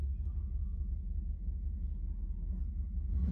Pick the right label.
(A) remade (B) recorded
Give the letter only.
B